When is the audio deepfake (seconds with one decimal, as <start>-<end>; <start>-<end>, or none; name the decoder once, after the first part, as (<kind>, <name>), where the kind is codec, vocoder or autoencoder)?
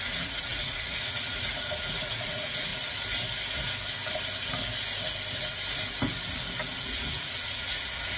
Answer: 0.0-2.7 (vocoder, Vocos); 6.8-8.2